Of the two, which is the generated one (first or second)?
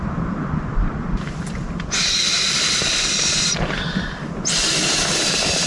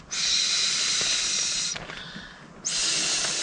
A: first